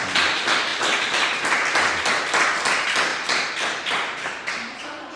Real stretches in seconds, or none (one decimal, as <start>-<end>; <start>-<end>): 0.0-5.2